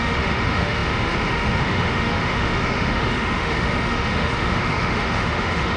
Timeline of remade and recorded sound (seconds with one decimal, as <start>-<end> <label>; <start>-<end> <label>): 0.0-5.8 remade